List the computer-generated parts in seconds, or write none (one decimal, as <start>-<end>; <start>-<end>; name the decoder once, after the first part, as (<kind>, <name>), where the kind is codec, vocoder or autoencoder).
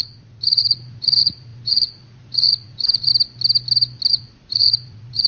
0.0-3.1 (vocoder, Vocos); 4.1-5.3